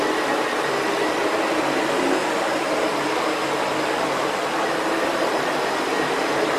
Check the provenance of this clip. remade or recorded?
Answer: recorded